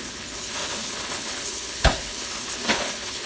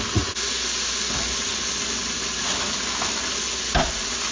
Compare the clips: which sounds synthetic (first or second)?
first